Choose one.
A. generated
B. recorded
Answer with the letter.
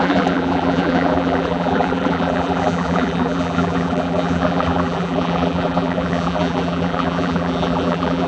A